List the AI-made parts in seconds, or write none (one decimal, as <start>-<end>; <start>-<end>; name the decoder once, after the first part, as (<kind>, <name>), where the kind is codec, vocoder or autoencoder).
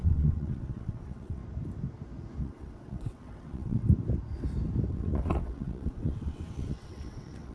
0.0-1.4 (vocoder, WaveNeXt); 2.4-3.8; 4.9-7.5